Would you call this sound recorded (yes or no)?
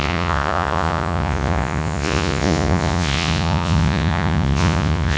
no